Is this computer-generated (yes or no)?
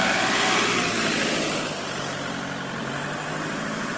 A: no